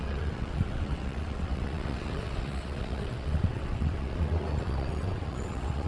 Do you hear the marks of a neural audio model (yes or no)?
yes